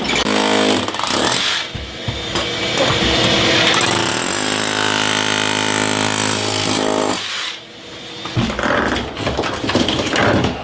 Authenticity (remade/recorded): recorded